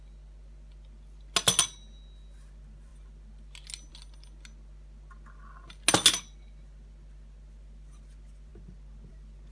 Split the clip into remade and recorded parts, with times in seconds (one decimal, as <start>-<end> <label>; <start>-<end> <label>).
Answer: 0.0-9.5 recorded